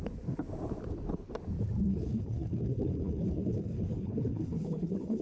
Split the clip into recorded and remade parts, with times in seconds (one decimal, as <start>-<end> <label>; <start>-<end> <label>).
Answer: 0.0-1.9 recorded; 1.9-5.2 remade